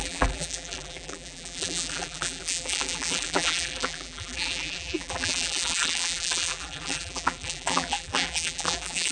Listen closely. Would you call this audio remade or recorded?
remade